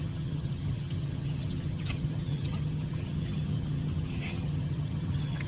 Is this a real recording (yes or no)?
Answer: no